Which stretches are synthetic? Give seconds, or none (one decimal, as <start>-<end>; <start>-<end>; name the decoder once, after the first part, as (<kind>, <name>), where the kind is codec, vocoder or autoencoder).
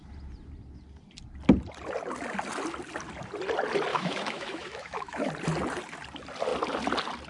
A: 3.9-5.3 (autoencoder, DAC-VAE)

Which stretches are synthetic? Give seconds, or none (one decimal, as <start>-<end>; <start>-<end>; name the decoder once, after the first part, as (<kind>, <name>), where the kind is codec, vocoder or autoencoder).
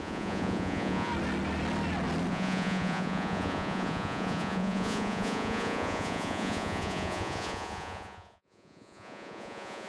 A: 0.0-1.1 (vocoder, Vocos); 2.3-9.9